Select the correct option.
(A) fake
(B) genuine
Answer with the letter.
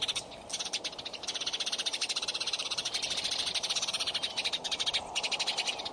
B